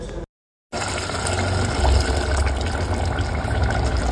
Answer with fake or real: real